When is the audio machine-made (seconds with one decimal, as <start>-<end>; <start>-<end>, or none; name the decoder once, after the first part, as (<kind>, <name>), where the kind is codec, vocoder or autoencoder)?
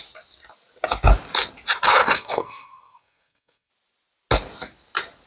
2.0-3.7 (codec, SNAC)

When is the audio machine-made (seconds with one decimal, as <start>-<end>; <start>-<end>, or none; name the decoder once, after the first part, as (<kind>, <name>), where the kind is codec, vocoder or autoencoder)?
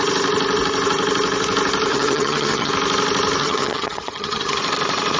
1.9-2.7 (vocoder, HiFi-GAN); 3.4-4.6